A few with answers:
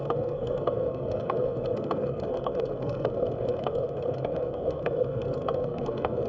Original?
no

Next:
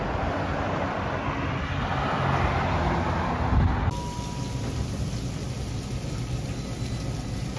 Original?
yes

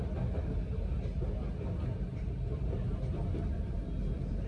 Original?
yes